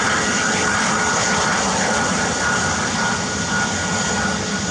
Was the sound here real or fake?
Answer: real